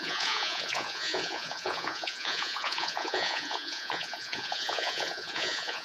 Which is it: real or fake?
fake